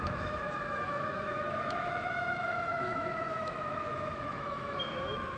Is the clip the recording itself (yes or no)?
no